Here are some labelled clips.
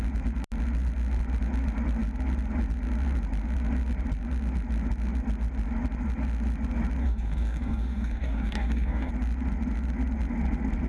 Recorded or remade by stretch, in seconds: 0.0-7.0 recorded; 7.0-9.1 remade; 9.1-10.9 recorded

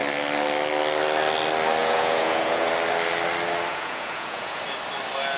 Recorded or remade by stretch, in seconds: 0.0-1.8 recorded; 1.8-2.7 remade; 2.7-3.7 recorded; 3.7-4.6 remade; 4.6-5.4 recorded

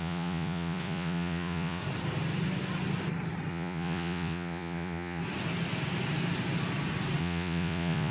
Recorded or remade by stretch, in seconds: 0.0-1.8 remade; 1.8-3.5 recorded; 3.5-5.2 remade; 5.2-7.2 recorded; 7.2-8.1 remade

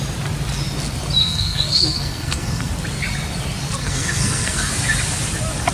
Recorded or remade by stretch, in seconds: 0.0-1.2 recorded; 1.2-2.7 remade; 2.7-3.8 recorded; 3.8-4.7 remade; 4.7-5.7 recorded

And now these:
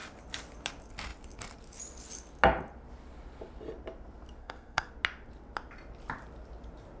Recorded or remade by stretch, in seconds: 0.0-4.4 recorded; 4.4-4.9 remade; 4.9-7.0 recorded